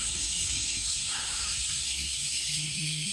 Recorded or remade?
remade